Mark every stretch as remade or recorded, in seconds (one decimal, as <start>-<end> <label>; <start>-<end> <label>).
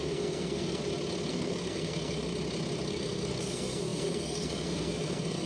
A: 0.0-0.8 remade; 0.8-1.3 recorded; 1.3-2.3 remade; 2.3-2.9 recorded; 2.9-5.5 remade